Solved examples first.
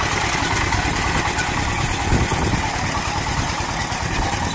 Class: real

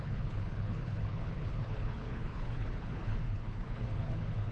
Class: fake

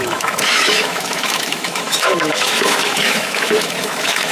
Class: fake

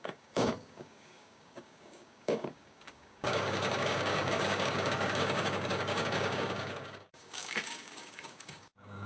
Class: fake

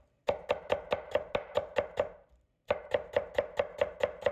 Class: real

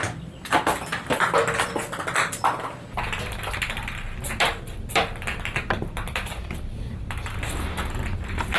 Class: real